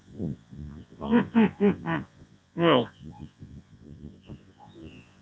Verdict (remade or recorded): remade